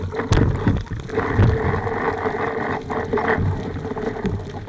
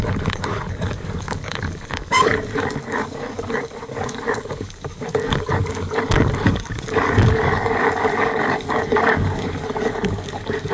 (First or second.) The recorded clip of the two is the first